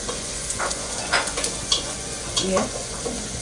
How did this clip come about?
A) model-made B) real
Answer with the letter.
A